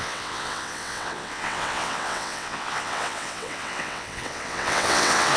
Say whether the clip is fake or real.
fake